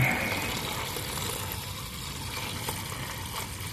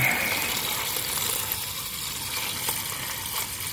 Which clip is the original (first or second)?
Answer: first